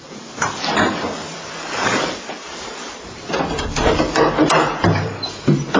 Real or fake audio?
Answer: fake